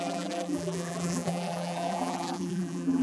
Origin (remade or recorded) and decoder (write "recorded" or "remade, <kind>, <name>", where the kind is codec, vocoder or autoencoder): remade, vocoder, BigVGAN v2